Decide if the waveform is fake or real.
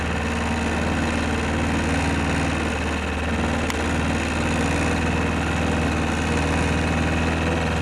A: real